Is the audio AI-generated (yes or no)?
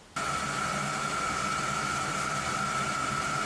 no